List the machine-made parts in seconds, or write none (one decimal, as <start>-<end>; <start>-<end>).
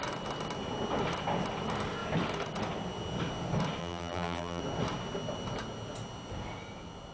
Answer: 3.8-4.6